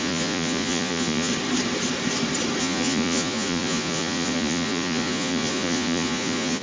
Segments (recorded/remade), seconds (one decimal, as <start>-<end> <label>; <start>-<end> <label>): 0.0-1.3 remade; 1.3-2.6 recorded; 2.6-6.6 remade